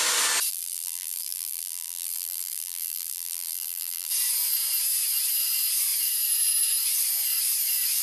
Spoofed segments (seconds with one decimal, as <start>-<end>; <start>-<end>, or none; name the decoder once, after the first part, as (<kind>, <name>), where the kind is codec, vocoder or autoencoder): 0.5-4.1 (vocoder, BigVGAN v2)